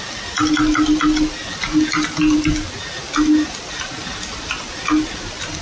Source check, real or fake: real